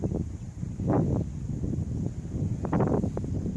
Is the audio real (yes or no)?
yes